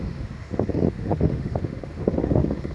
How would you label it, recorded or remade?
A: remade